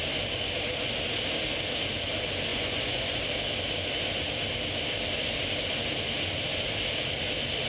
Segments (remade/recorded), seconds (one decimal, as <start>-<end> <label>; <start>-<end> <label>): 0.0-2.5 recorded; 2.5-3.2 remade; 3.2-7.7 recorded